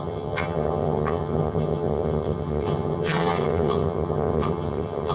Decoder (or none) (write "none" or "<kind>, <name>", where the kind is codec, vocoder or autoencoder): vocoder, HiFi-GAN